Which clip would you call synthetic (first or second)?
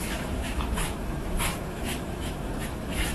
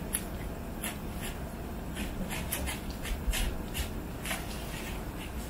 first